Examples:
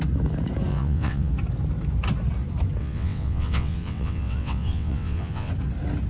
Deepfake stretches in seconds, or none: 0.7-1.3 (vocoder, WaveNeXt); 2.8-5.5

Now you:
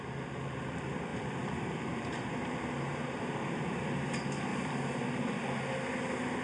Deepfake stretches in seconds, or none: 1.1-3.2 (vocoder, BigVGAN v2); 4.5-5.6

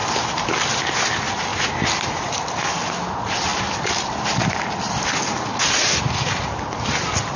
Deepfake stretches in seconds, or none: none

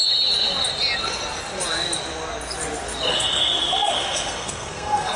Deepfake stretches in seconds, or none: 3.1-5.2 (codec, SNAC)

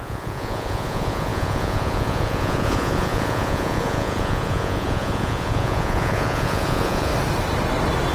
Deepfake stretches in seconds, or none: 0.0-7.1 (vocoder, Vocos)